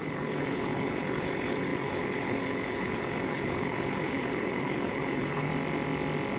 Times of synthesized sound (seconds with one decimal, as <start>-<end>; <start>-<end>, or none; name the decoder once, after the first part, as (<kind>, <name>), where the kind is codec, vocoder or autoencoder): 0.0-5.5 (codec, HILCodec)